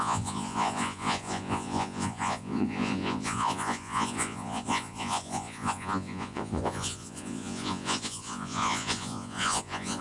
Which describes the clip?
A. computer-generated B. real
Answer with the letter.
A